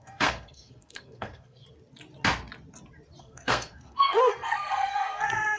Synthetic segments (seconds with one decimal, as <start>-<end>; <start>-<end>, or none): 0.0-1.6; 3.2-5.6